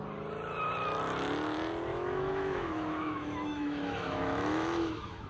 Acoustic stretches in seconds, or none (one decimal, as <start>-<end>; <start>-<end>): 0.0-1.9